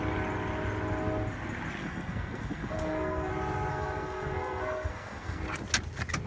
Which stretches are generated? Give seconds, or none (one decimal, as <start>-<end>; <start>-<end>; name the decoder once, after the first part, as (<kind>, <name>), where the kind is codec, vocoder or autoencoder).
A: 1.8-3.3 (codec, SNAC); 3.7-5.4